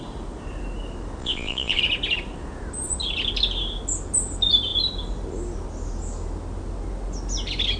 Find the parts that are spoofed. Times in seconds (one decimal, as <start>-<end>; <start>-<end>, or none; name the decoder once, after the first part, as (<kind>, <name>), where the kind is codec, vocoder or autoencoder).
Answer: 1.2-1.8 (vocoder, Vocos)